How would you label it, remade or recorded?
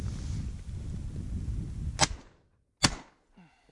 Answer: recorded